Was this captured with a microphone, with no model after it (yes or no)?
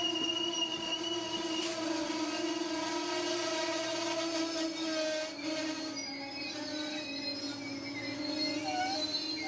yes